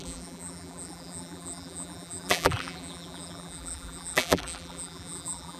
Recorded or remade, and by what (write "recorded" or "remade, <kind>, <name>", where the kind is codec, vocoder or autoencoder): remade, vocoder, BigVGAN v2